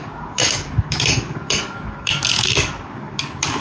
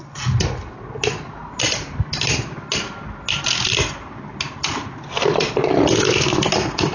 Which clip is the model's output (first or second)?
first